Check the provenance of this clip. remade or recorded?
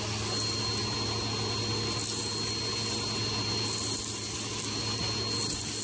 recorded